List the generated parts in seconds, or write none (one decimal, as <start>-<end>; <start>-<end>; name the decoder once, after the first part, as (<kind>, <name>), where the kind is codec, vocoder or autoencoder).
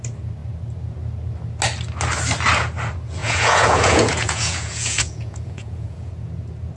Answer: 3.2-6.1 (vocoder, Vocos)